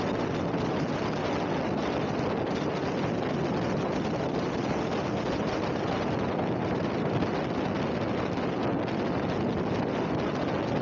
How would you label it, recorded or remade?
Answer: recorded